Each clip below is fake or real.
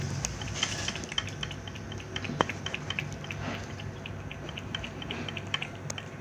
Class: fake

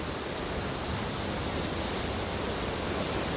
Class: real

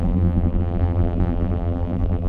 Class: fake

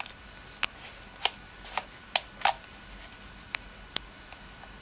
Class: real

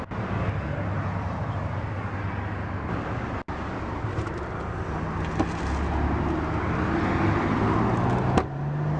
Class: real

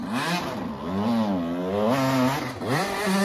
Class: real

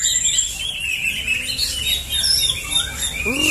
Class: real